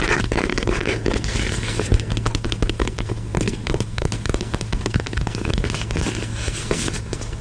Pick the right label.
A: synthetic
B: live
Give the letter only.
A